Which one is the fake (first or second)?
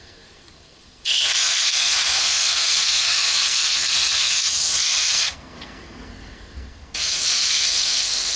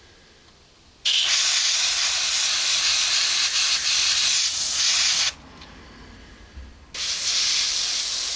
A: first